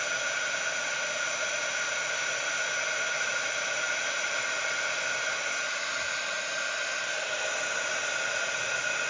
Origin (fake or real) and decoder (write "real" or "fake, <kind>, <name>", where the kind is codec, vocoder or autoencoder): real